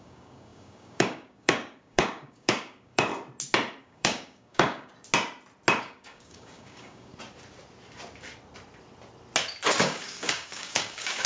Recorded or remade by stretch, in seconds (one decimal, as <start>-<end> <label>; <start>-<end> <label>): 0.0-3.1 remade; 3.1-3.8 recorded; 3.8-4.9 remade; 4.9-5.8 recorded; 5.8-7.1 remade; 7.1-9.8 recorded; 9.8-11.3 remade